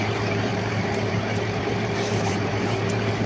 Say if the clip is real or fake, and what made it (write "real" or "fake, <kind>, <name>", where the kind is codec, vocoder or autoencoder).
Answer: fake, vocoder, BigVGAN v2